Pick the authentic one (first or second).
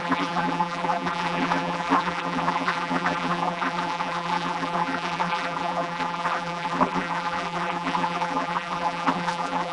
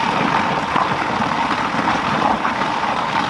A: second